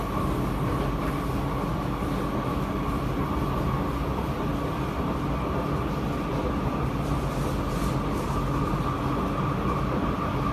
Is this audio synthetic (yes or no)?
no